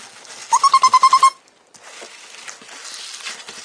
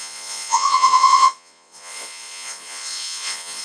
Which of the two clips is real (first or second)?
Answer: first